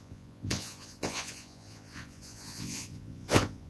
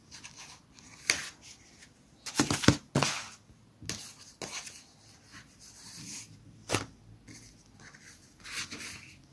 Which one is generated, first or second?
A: first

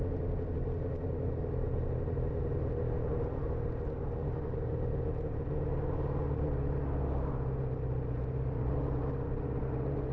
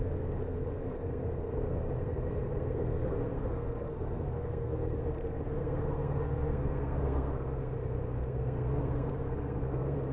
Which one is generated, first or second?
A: second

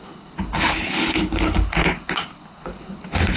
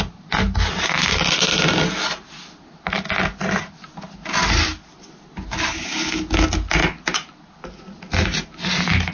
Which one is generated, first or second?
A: first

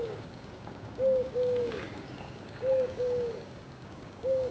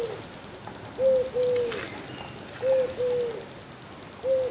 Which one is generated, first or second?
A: first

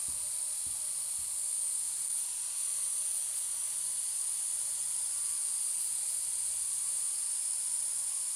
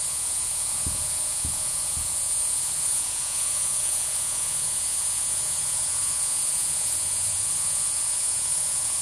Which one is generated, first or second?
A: second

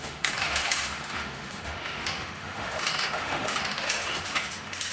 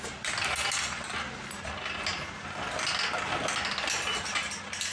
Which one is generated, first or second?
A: first